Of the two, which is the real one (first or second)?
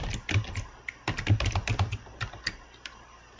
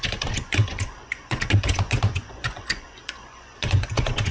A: first